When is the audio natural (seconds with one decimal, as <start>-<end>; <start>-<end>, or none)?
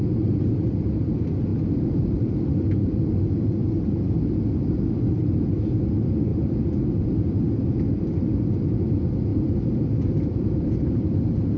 0.0-6.3; 8.5-9.3; 10.9-11.6